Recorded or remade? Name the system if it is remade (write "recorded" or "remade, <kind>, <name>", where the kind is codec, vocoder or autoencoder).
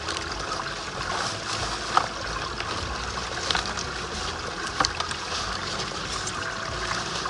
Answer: recorded